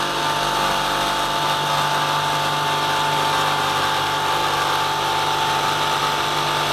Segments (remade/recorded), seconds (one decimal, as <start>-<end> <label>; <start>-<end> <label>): 0.0-6.7 recorded